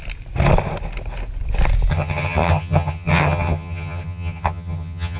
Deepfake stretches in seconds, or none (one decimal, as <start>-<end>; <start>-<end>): 1.9-5.2

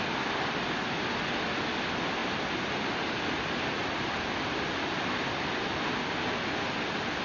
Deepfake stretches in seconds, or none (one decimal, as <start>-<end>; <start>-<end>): none

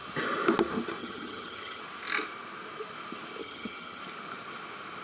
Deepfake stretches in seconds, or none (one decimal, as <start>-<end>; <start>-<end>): 1.0-1.8; 3.4-4.0

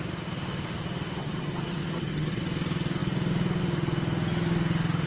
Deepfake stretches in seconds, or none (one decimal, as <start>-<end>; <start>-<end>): 1.2-2.4

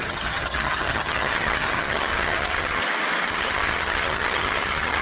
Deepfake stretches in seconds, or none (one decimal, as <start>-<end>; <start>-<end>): 0.0-2.8; 3.3-5.0

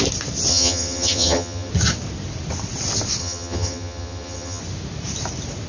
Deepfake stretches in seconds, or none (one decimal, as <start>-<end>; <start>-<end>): 0.5-1.7; 3.2-4.6

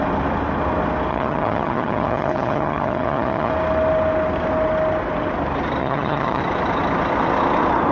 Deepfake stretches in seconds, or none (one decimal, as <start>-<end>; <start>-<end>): 1.1-3.5; 5.8-6.4